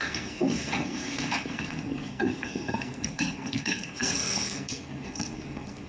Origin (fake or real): fake